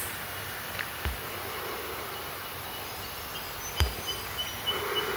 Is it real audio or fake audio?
real